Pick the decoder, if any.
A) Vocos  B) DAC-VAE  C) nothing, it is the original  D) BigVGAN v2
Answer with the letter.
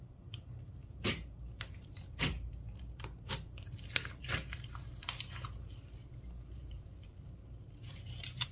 D